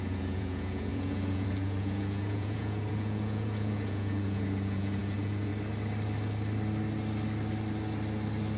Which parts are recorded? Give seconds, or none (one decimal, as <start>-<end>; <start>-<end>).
5.5-8.6